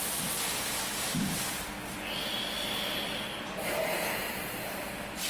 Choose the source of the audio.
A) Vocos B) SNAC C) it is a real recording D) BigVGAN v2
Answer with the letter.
D